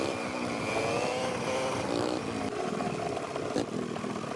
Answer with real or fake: real